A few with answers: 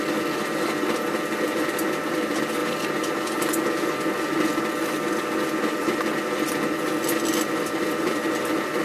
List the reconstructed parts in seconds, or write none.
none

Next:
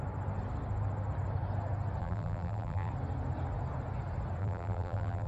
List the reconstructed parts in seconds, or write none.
2.0-2.9 (vocoder, BigVGAN v2); 4.4-5.3

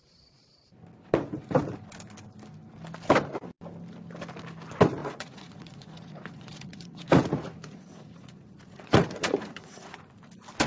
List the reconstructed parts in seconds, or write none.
5.0-10.1 (vocoder, Vocos)

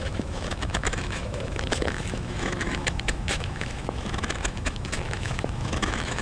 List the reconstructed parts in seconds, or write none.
0.0-6.2 (autoencoder, DAC-VAE)

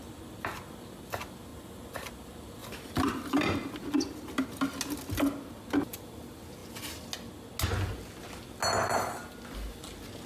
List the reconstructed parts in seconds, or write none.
1.5-2.1 (vocoder, BigVGAN v2); 2.6-3.1